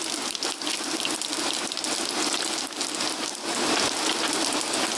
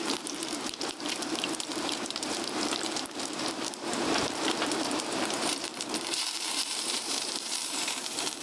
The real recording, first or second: first